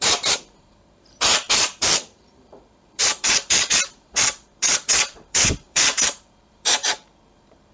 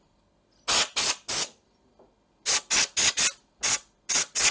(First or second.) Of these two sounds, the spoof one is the first